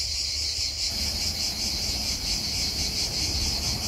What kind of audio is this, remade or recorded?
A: recorded